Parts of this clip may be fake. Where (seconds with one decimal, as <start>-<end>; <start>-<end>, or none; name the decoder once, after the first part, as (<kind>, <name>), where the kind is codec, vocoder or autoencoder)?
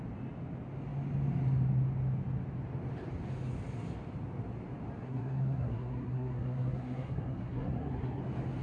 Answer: 5.0-8.2 (codec, SNAC)